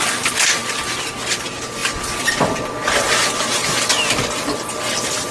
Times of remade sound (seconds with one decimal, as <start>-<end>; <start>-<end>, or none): none

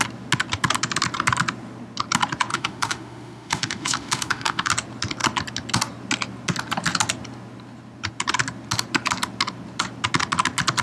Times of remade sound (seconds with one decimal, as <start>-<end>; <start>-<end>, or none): 2.5-4.7

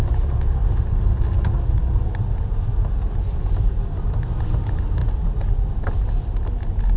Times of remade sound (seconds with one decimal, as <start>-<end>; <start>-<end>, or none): none